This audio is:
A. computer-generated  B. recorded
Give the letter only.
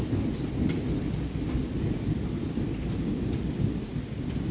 B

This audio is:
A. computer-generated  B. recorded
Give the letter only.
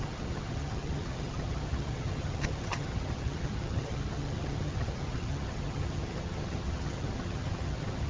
A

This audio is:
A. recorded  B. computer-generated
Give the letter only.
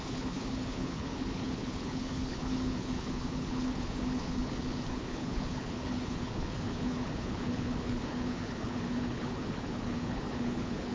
B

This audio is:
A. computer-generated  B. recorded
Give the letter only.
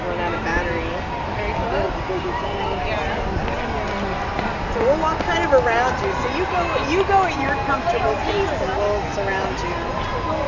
B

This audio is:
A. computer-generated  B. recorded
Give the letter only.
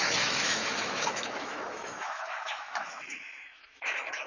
A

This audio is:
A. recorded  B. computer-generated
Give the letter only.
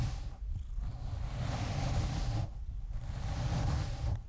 A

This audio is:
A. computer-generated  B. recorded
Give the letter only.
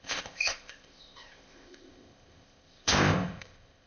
A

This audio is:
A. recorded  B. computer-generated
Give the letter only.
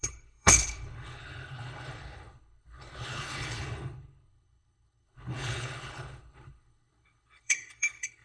B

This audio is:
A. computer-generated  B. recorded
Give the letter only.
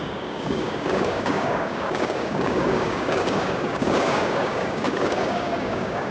A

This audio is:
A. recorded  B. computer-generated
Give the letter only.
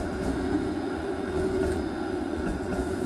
B